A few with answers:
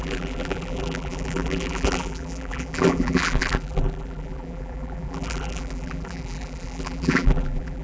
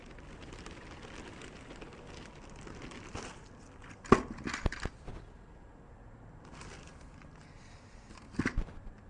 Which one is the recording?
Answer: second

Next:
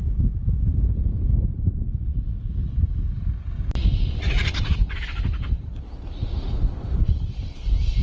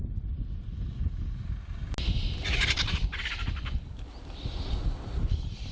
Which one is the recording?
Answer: second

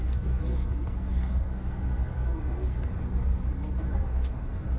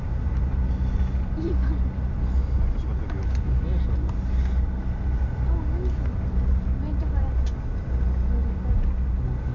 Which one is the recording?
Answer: second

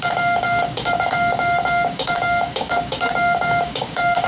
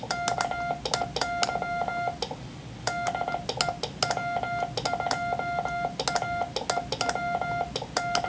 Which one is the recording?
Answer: second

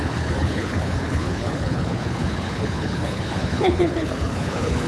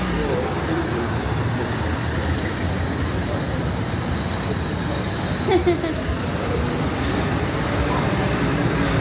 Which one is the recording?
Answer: second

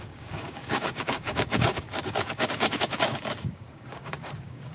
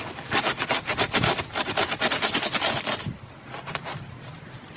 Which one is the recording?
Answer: second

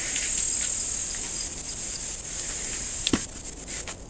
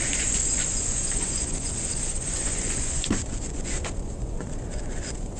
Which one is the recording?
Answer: first